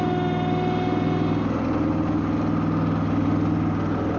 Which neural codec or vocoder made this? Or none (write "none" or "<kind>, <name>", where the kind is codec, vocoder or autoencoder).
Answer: none